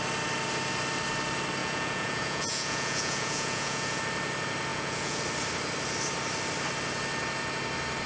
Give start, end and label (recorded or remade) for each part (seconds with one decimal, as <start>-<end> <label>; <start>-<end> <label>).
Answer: 0.0-1.6 recorded; 1.6-4.0 remade; 4.0-4.7 recorded; 4.7-5.2 remade; 5.2-8.1 recorded